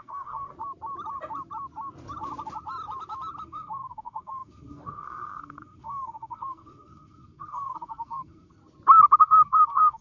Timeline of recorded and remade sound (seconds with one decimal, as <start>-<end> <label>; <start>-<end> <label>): 0.0-0.5 remade; 0.5-3.4 recorded; 3.4-8.6 remade; 8.6-9.2 recorded; 9.2-10.0 remade